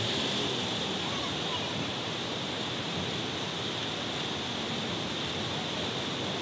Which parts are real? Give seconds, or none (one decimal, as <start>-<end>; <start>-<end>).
0.0-1.9; 3.0-6.4

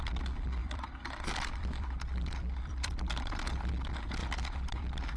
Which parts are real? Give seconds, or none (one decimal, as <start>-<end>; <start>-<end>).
0.0-0.6; 3.7-4.2

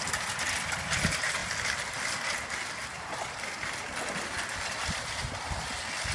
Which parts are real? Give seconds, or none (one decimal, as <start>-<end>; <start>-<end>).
0.0-1.4; 5.1-6.1

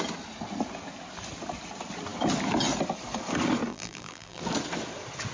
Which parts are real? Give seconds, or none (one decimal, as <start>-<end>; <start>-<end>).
0.0-3.7; 4.4-5.3

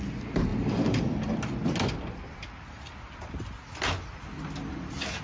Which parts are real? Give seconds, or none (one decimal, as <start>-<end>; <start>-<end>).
0.0-0.5; 1.0-5.2

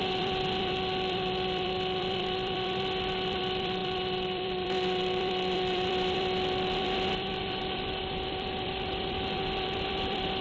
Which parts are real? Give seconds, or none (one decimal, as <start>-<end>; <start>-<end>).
none

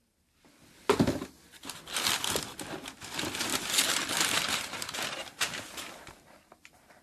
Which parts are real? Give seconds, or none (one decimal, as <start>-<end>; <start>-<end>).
0.0-7.0

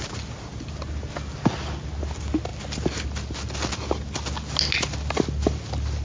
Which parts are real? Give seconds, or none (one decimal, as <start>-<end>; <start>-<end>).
0.0-6.0